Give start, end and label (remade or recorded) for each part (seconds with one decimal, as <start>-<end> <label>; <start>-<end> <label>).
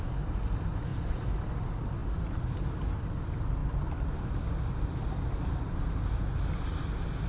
0.0-7.3 recorded